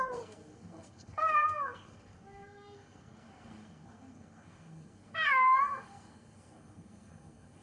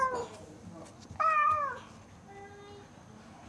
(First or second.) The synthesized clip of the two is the first